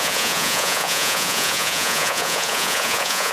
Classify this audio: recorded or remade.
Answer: remade